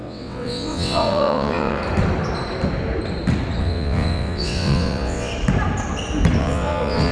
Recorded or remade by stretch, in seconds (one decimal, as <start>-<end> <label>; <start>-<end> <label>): 0.0-1.8 remade; 1.8-3.6 recorded; 3.6-5.3 remade; 5.3-6.4 recorded; 6.4-7.1 remade